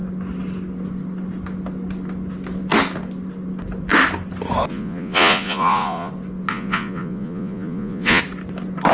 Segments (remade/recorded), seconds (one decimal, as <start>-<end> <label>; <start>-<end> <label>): 0.0-4.7 recorded; 4.7-6.1 remade; 6.1-6.5 recorded; 6.5-8.2 remade; 8.2-8.9 recorded